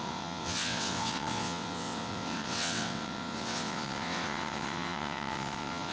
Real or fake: fake